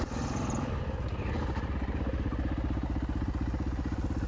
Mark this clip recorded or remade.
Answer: recorded